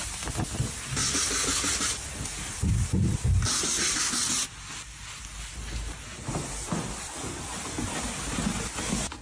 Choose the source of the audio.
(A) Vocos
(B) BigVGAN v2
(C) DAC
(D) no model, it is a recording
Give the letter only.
D